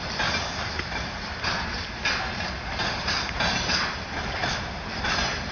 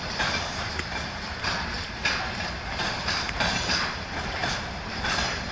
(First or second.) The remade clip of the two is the second